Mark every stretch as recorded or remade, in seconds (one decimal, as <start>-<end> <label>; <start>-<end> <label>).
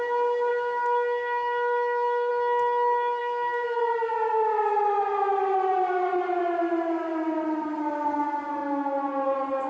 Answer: 0.0-0.5 recorded; 0.5-2.3 remade; 2.3-3.2 recorded; 3.2-3.8 remade; 3.8-9.7 recorded